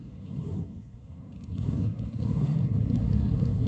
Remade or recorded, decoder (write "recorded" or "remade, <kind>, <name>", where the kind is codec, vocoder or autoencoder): remade, codec, SNAC